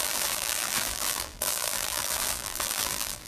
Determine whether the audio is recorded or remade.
remade